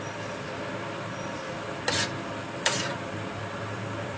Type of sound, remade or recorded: remade